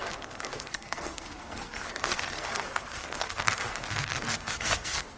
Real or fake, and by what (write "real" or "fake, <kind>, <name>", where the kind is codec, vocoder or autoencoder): fake, codec, SNAC